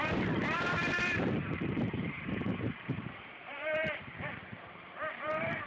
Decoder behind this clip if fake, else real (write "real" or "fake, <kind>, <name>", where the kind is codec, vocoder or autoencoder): fake, vocoder, BigVGAN v2